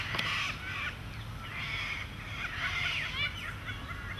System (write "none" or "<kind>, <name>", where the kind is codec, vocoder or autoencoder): none